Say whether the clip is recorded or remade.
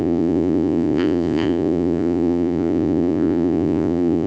remade